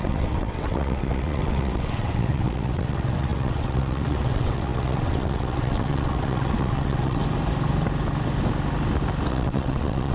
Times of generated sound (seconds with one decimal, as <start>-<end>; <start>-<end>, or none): 0.0-7.2; 9.3-10.1